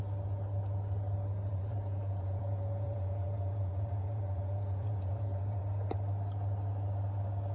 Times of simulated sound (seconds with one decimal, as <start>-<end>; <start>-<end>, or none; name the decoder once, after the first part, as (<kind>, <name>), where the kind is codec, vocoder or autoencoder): 1.5-5.6 (vocoder, Vocos)